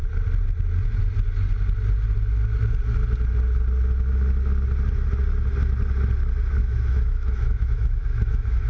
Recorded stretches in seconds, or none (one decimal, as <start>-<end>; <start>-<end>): 0.0-6.6